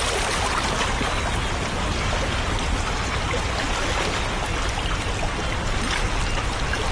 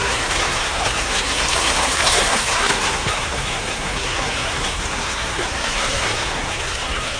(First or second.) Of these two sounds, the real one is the first